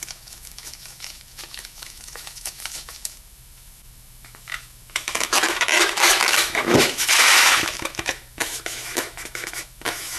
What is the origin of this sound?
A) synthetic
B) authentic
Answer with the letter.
A